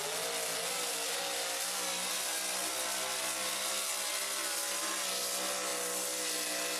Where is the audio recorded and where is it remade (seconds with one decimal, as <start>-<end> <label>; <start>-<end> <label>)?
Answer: 0.0-6.8 recorded